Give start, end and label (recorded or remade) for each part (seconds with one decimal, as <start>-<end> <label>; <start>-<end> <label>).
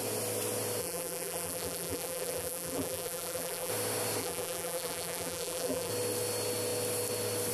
0.0-0.8 recorded; 0.8-3.7 remade; 3.7-4.2 recorded; 4.2-5.9 remade; 5.9-7.5 recorded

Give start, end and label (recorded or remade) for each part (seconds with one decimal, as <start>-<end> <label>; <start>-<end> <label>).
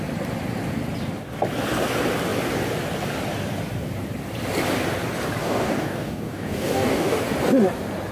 0.0-5.4 recorded; 5.4-7.2 remade; 7.2-8.1 recorded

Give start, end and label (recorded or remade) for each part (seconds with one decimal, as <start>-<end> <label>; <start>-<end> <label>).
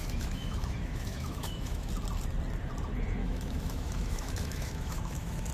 0.0-1.9 remade; 1.9-3.2 recorded; 3.2-5.5 remade